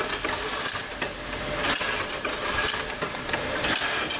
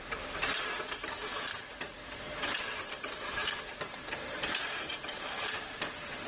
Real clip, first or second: first